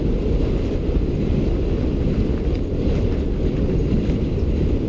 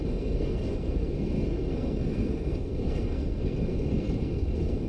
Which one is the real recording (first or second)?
first